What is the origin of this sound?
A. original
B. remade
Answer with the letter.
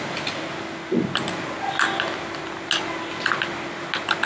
A